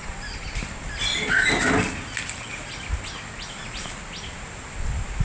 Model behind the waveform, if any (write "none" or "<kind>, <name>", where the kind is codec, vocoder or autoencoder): none